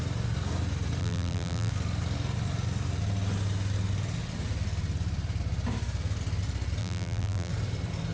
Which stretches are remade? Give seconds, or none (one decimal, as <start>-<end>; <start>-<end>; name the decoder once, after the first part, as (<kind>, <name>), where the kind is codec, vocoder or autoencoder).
1.0-1.7 (vocoder, BigVGAN v2); 6.8-7.5